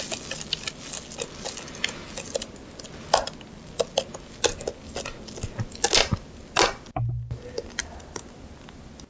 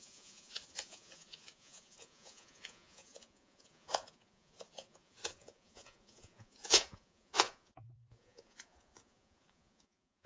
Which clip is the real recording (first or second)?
first